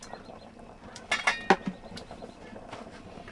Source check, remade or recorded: recorded